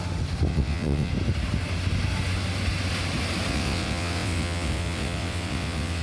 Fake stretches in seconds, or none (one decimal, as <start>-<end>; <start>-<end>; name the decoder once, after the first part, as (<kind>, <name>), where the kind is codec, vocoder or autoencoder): 0.5-1.1 (vocoder, WaveNeXt); 3.5-6.0